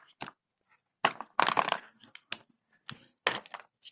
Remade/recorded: recorded